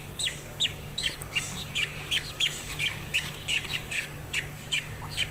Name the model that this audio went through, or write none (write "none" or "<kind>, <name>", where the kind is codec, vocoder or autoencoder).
codec, DAC